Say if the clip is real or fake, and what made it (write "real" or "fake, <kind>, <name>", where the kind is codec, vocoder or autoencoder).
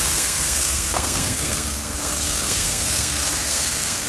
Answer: fake, codec, SNAC